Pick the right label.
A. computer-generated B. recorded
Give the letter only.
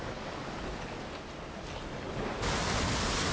B